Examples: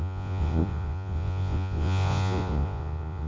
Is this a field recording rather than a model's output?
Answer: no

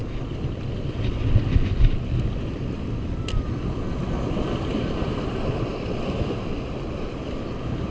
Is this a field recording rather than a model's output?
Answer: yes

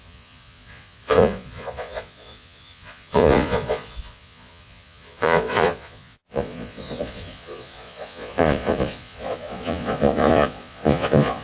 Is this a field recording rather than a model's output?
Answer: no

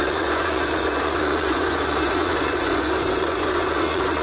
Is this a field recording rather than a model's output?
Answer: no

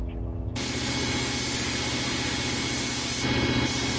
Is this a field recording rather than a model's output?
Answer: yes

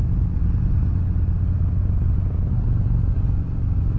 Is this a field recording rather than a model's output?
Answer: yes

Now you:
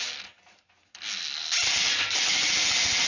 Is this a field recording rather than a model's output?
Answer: yes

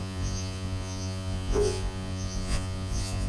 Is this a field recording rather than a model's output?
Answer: no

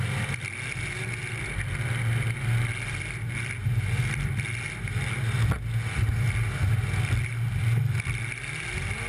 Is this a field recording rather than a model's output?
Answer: yes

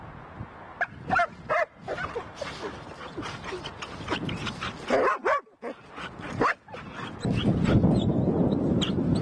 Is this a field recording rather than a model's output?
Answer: yes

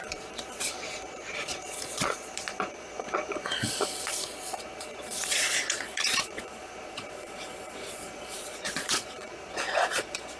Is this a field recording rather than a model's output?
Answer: no